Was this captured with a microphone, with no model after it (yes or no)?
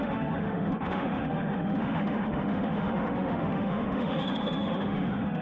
no